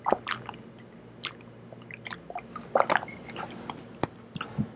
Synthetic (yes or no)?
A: no